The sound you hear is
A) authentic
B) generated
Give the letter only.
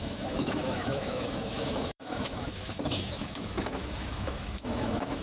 B